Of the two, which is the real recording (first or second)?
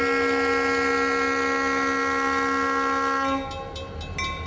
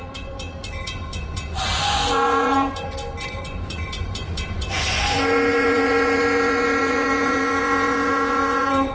first